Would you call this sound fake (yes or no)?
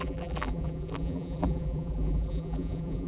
yes